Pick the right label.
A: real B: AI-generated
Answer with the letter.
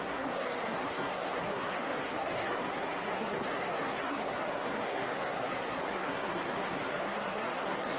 B